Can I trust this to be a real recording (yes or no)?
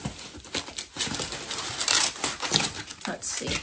yes